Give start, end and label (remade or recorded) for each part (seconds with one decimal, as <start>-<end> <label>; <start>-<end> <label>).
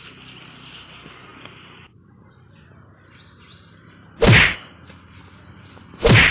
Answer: 0.0-6.3 recorded